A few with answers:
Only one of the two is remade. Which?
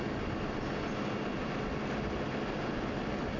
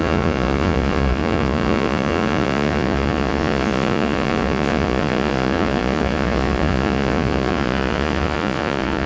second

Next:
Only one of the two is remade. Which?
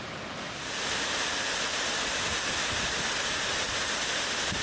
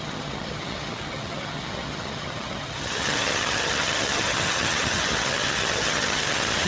second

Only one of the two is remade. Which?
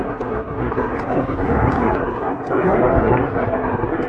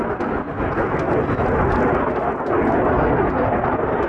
first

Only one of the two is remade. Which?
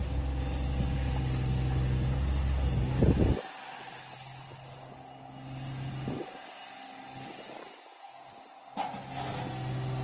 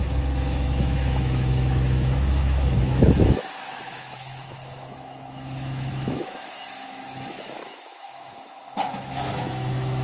second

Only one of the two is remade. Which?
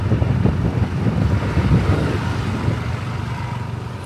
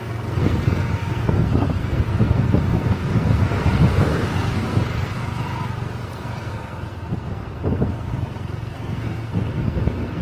second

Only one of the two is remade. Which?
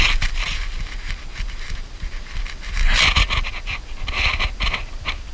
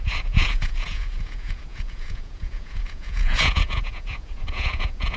second